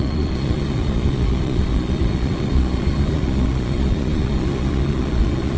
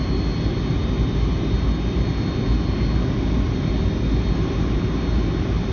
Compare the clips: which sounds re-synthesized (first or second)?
first